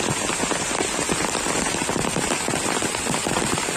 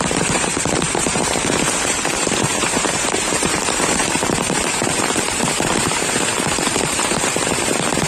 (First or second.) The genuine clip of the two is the first